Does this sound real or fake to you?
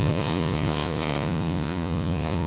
fake